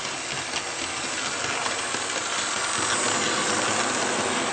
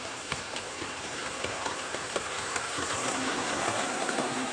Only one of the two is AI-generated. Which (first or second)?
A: second